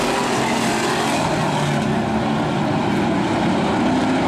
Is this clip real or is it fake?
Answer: real